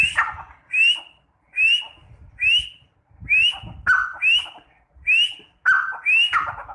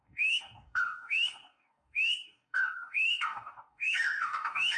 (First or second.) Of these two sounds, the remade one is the second